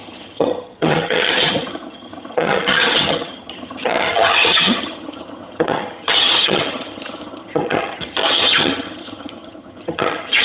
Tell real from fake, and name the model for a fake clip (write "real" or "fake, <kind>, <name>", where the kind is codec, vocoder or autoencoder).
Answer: fake, vocoder, HiFi-GAN